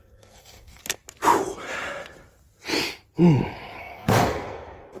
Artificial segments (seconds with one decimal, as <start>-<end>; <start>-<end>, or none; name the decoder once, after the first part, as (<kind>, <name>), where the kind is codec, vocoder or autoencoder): 0.0-0.8 (codec, SNAC); 3.8-5.0